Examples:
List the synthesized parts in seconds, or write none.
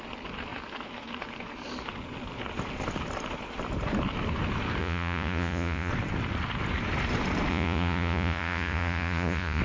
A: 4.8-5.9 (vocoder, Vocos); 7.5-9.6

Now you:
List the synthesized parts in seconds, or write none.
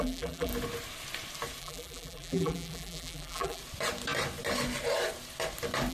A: 0.0-0.5 (vocoder, BigVGAN v2); 1.6-3.6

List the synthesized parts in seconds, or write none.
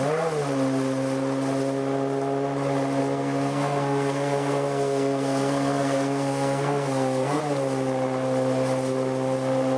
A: 3.0-7.4 (codec, SNAC)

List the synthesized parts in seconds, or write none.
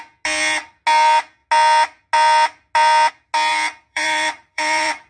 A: 3.5-5.1 (vocoder, BigVGAN v2)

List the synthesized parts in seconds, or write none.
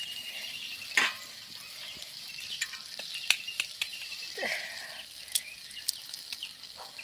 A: 1.8-6.0 (vocoder, BigVGAN v2)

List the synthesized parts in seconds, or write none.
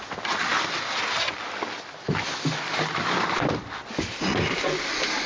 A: none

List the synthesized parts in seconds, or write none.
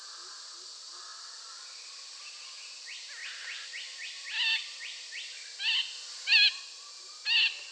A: none